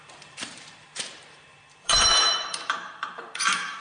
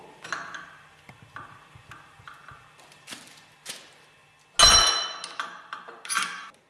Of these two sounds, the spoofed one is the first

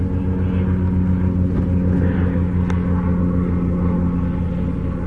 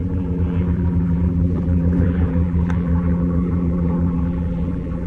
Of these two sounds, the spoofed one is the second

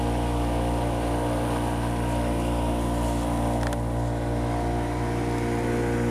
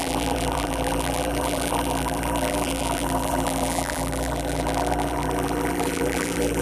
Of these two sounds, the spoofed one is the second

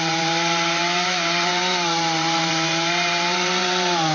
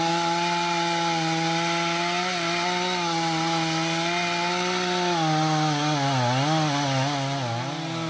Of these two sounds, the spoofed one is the first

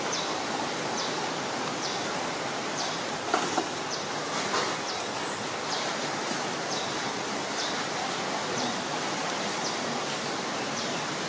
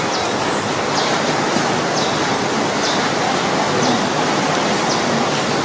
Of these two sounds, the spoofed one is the first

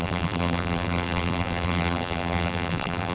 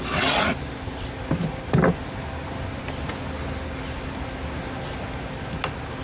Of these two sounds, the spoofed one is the first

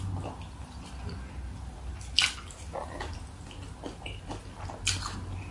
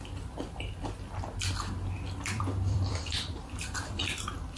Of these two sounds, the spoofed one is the second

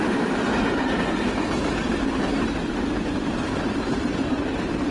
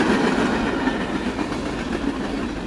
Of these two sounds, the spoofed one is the first